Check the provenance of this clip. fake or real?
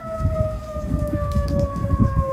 fake